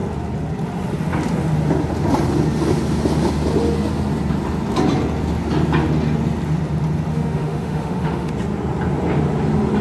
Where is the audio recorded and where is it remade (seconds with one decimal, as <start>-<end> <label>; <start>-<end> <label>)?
0.0-7.1 recorded; 7.1-8.3 remade; 8.3-9.8 recorded